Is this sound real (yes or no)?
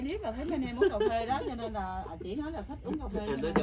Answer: yes